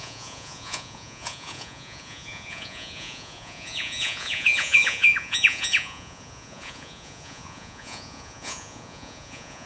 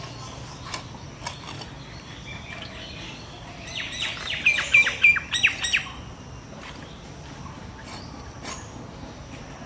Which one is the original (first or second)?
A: second